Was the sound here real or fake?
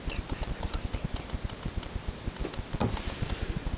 real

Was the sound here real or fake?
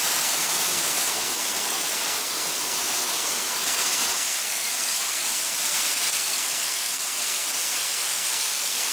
fake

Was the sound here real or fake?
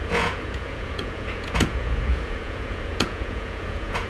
fake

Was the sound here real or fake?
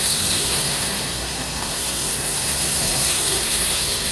fake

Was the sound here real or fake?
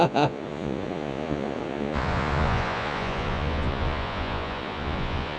fake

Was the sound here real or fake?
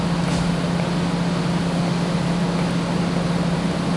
real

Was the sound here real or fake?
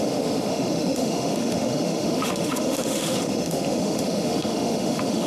fake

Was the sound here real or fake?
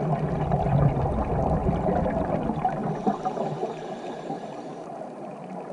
real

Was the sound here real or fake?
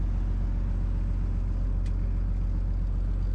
real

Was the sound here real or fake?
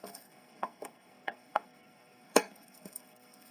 fake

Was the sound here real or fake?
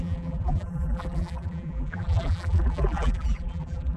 fake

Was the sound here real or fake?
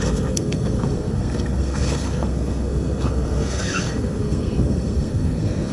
fake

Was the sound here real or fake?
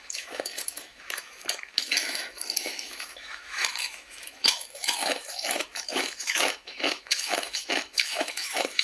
fake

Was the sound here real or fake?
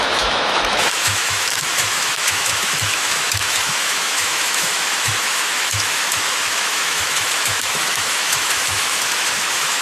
fake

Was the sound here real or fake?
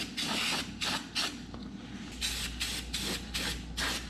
real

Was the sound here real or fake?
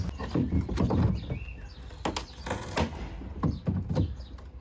real